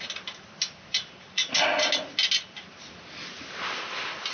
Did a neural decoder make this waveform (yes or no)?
no